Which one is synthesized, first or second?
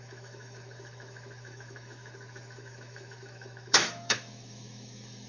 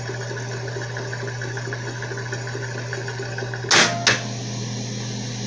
first